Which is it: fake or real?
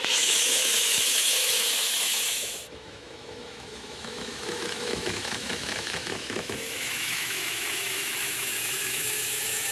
fake